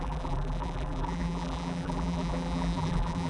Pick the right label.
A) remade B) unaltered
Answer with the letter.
A